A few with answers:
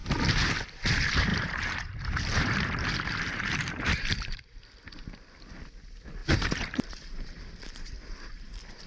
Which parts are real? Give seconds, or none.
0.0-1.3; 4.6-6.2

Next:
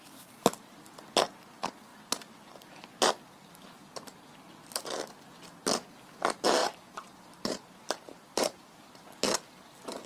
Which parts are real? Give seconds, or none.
0.0-1.9; 2.9-3.8; 4.5-6.6; 8.7-10.1

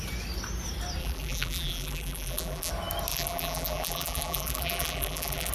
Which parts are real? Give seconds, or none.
0.0-1.0; 2.7-3.1

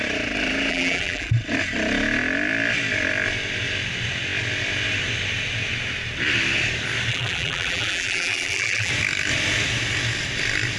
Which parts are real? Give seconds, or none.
0.0-0.7; 1.3-7.1; 8.9-10.8

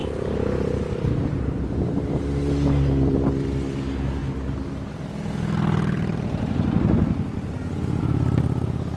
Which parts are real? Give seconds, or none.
0.0-9.0

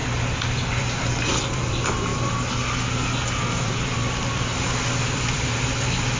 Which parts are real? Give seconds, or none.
2.1-3.5

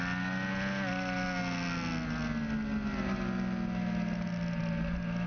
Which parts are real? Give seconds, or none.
0.0-5.3

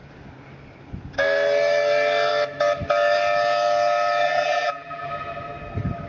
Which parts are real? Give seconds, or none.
0.0-4.2; 5.1-6.1